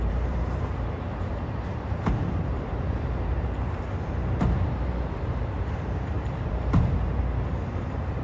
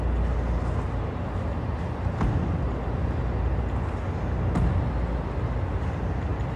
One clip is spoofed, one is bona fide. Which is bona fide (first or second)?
second